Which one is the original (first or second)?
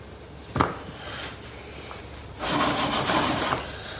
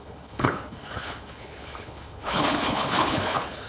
first